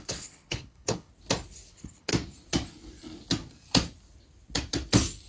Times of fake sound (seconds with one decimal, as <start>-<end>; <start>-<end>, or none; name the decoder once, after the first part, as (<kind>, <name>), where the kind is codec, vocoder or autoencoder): 0.0-1.1 (codec, HILCodec); 1.7-2.1